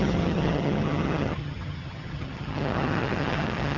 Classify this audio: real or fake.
fake